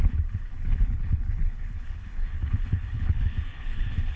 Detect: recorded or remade remade